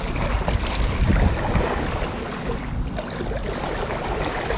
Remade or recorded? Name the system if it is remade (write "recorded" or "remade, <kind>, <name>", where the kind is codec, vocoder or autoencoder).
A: recorded